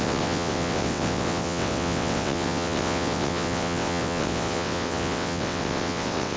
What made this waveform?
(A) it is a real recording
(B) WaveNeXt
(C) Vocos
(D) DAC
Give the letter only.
B